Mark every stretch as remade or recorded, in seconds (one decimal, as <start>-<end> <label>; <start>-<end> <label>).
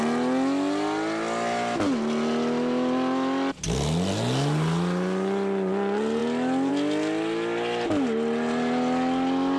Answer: 0.0-9.6 recorded